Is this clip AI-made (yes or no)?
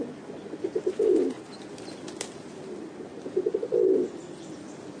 no